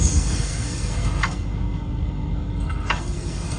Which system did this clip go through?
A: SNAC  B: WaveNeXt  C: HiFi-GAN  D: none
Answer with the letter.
A